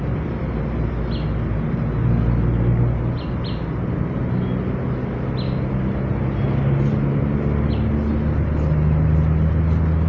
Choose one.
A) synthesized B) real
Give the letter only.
B